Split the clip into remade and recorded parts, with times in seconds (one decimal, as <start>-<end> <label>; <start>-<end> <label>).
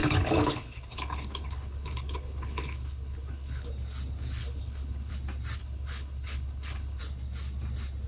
0.0-3.7 remade; 3.7-4.4 recorded; 4.4-5.1 remade; 5.1-5.6 recorded; 5.6-7.0 remade; 7.0-8.1 recorded